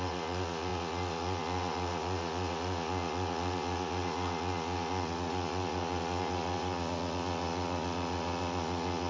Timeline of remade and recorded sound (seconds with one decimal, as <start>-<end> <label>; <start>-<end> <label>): 0.0-9.1 remade